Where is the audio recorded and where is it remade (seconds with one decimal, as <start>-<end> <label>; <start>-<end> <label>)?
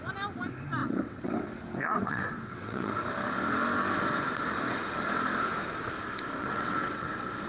0.0-0.8 recorded; 0.8-2.9 remade; 2.9-6.4 recorded; 6.4-7.1 remade; 7.1-7.5 recorded